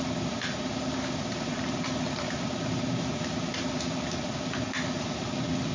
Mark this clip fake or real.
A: real